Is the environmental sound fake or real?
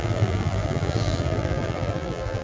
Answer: fake